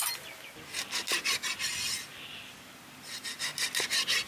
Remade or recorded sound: recorded